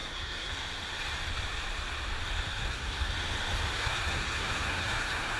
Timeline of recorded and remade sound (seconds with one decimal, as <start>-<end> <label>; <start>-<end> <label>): 0.0-0.5 remade; 0.5-2.5 recorded; 2.5-3.1 remade; 3.1-3.7 recorded; 3.7-5.4 remade